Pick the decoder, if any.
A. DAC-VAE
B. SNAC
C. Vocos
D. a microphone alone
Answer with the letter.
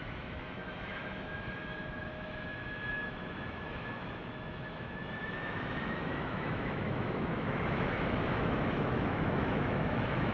A